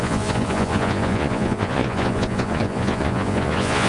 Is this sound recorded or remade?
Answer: remade